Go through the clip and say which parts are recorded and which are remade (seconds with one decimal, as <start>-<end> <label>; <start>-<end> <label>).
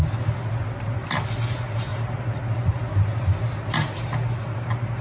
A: 0.0-5.0 recorded